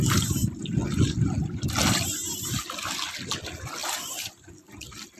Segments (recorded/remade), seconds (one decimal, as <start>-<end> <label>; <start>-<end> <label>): 0.0-0.8 recorded; 0.8-1.7 remade; 1.7-3.8 recorded; 3.8-5.2 remade